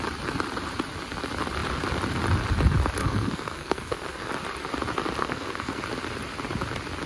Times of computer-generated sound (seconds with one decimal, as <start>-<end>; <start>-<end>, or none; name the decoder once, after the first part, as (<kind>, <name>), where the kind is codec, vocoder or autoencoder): 3.0-4.3 (codec, SNAC); 5.2-5.8